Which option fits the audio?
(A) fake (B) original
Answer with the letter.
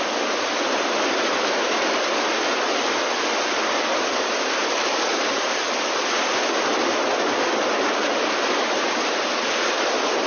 B